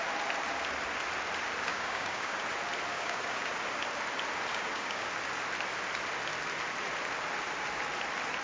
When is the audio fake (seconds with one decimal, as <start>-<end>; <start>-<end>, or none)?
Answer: 1.7-2.4; 2.9-3.5; 4.5-5.1